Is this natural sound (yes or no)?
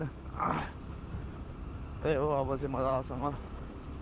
no